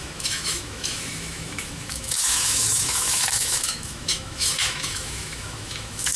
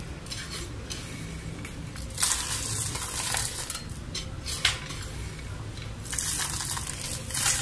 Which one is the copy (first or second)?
first